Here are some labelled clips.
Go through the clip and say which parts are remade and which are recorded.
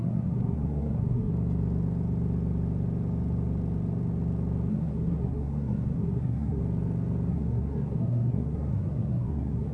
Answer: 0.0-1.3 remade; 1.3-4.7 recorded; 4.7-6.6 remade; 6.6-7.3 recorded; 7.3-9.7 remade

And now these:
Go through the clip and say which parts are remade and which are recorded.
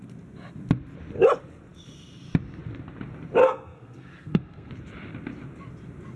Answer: 0.0-3.4 recorded; 3.4-4.7 remade; 4.7-6.2 recorded